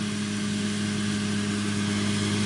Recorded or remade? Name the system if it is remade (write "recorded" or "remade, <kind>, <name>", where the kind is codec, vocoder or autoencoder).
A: recorded